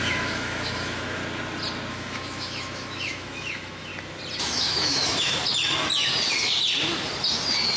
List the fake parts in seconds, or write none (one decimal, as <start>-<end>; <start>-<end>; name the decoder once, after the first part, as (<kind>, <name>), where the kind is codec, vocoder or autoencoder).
0.0-1.2 (autoencoder, DAC-VAE); 1.9-3.9; 4.4-5.4